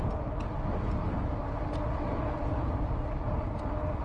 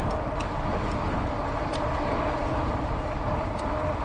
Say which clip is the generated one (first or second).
second